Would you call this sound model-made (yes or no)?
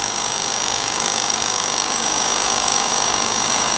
yes